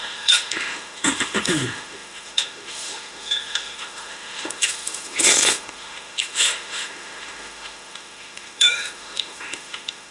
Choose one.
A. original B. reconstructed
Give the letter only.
B